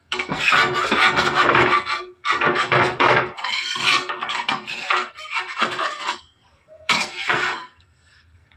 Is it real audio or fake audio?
fake